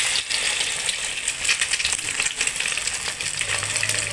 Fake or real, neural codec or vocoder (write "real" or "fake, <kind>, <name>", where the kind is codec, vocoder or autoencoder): real